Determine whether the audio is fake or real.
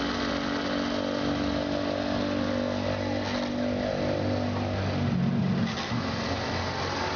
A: real